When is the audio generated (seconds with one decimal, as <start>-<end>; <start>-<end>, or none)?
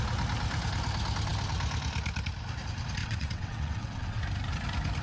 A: 3.0-4.2